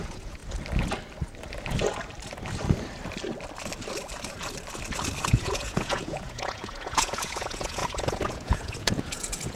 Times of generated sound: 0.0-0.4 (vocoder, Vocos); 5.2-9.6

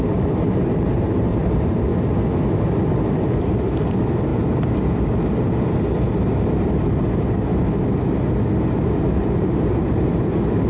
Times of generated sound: 0.0-1.9 (vocoder, BigVGAN v2); 3.0-4.3; 9.0-10.7

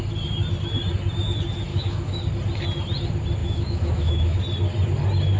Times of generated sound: 1.7-2.2 (autoencoder, DAC-VAE); 3.4-4.4

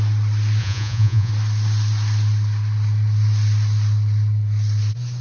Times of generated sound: 0.6-1.3 (vocoder, Vocos)

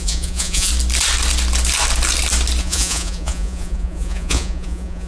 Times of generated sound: 0.0-0.7 (vocoder, Vocos); 2.6-5.1